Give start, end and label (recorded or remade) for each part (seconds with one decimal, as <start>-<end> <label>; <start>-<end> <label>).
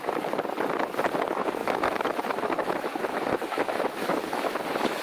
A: 0.0-1.6 recorded; 1.6-4.6 remade; 4.6-5.0 recorded